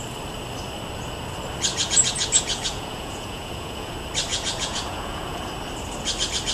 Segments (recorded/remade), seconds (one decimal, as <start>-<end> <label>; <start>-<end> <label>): 0.0-1.7 recorded; 1.7-3.9 remade; 3.9-4.3 recorded; 4.3-5.4 remade; 5.4-6.5 recorded